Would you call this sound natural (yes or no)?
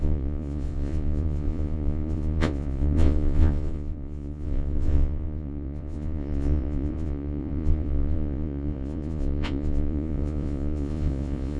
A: no